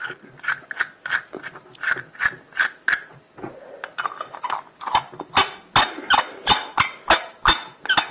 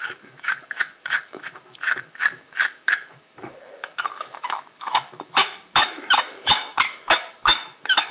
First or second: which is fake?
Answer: second